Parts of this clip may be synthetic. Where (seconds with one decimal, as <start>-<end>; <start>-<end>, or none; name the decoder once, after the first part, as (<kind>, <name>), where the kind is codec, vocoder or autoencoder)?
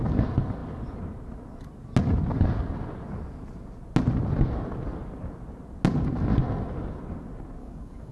7.6-8.1 (codec, DAC)